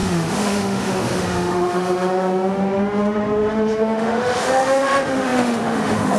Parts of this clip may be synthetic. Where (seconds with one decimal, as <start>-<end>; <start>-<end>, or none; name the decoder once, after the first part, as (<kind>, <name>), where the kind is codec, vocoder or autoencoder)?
0.0-6.2 (autoencoder, DAC-VAE)